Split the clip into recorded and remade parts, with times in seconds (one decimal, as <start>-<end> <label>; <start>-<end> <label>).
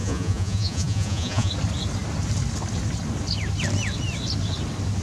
0.0-1.5 remade; 1.5-5.0 recorded